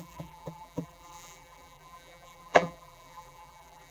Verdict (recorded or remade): remade